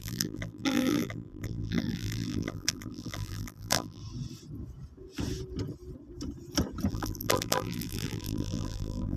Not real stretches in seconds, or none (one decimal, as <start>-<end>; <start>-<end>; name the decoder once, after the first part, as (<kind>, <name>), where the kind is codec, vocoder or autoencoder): 0.0-4.0 (vocoder, BigVGAN v2); 6.9-9.2